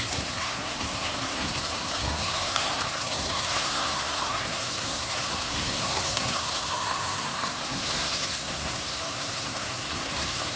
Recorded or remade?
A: remade